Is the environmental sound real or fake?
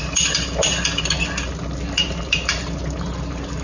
real